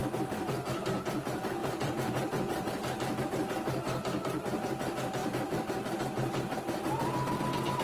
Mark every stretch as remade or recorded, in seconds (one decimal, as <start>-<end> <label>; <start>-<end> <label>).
0.0-0.5 remade; 0.5-1.6 recorded; 1.6-3.2 remade; 3.2-5.2 recorded; 5.2-6.0 remade; 6.0-7.8 recorded